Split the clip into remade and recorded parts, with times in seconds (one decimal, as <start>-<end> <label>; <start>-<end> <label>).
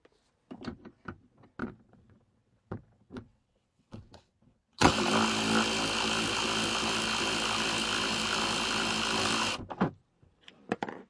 0.0-1.6 recorded; 1.6-4.9 remade; 4.9-11.1 recorded